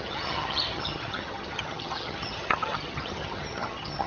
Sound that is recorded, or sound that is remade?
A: remade